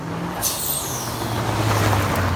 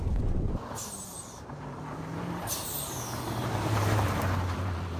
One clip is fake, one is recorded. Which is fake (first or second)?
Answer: second